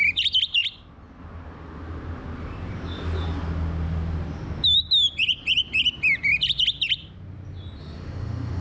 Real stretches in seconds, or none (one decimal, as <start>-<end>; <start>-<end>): 0.0-7.8